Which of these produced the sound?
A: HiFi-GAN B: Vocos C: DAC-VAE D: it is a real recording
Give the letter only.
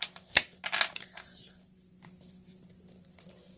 D